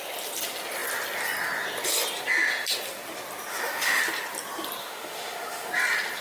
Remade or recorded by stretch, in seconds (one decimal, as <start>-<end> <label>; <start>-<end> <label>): 0.0-3.5 recorded; 3.5-4.0 remade; 4.0-4.8 recorded; 4.8-5.7 remade; 5.7-6.2 recorded